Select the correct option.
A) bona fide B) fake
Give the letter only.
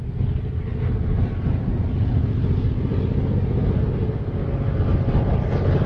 A